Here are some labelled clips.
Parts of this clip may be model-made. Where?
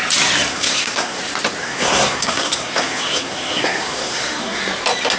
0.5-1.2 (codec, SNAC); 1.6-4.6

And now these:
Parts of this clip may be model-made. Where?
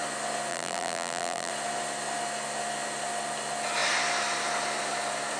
0.5-1.5 (vocoder, BigVGAN v2)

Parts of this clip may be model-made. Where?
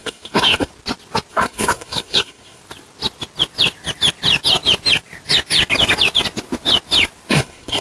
0.0-0.7 (codec, SNAC); 1.3-2.6; 7.3-7.8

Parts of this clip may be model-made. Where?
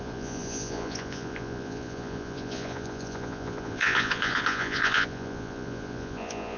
0.0-6.6 (vocoder, Vocos)